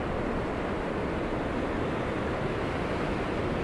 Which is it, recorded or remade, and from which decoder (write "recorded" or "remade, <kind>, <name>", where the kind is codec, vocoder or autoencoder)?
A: recorded